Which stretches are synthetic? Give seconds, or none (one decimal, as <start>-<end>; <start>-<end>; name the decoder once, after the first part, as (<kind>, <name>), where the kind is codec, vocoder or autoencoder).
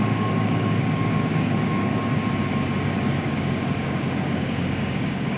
0.0-2.2 (codec, DAC); 3.2-5.4